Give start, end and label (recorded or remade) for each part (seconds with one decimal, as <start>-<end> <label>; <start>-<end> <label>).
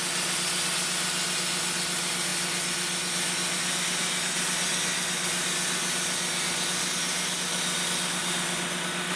0.0-9.2 recorded